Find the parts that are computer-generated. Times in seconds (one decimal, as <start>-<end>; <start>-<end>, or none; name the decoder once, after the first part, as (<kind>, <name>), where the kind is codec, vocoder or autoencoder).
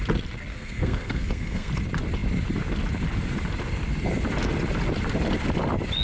0.5-1.7 (codec, SNAC)